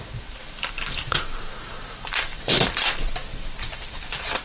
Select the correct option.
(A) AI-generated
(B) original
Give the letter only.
A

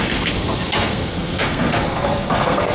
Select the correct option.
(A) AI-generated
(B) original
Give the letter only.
A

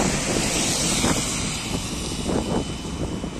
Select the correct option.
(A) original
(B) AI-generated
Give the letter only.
A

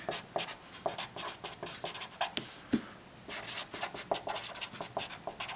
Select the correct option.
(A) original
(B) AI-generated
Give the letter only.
A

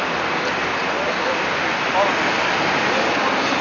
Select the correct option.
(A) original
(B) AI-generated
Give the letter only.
A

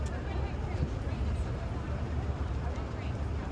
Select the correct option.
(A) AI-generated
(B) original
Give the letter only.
B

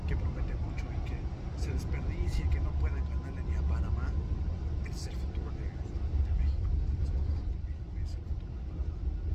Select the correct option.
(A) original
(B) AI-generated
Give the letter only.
A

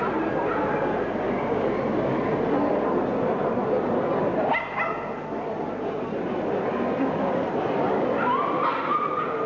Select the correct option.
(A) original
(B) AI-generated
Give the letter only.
A